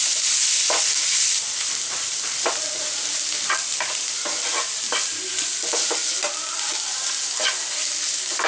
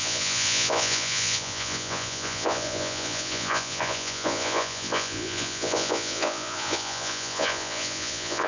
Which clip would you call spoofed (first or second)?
second